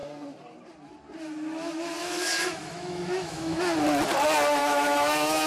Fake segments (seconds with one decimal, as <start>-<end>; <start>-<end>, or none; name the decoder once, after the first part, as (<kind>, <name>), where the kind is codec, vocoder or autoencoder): 2.0-3.6 (autoencoder, DAC-VAE); 4.6-5.5